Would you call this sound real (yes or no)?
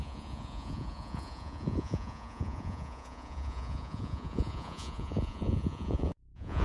no